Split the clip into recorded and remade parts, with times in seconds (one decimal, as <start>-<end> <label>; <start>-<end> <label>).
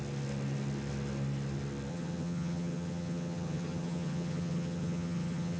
0.0-1.9 recorded; 1.9-5.6 remade